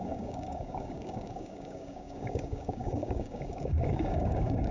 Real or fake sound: fake